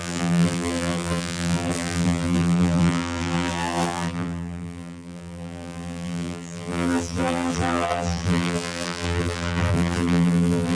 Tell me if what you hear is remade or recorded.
remade